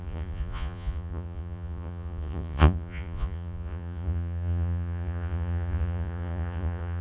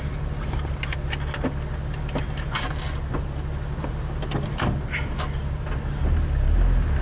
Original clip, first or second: second